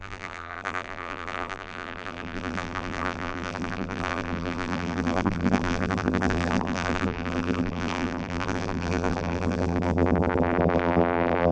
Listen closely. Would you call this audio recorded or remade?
remade